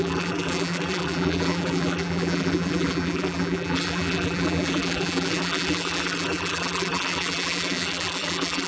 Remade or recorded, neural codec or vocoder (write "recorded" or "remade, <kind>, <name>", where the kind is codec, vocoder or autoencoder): remade, vocoder, BigVGAN v2